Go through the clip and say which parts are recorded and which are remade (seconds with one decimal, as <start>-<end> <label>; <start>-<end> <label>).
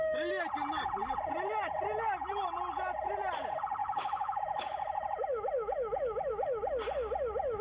0.0-3.8 recorded; 3.8-6.3 remade; 6.3-7.6 recorded